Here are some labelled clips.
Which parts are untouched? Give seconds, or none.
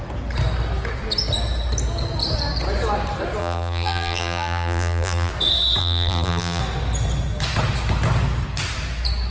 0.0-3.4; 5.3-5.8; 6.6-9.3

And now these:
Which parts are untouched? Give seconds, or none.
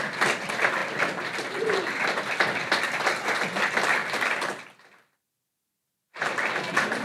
0.0-7.0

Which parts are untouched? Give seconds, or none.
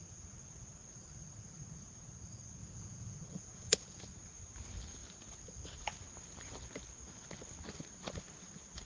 0.0-2.6; 4.0-8.8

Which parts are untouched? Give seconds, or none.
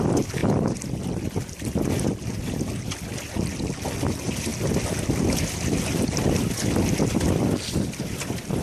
0.0-8.6